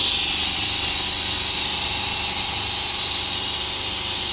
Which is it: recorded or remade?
recorded